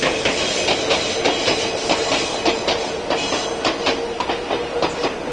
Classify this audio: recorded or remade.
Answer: recorded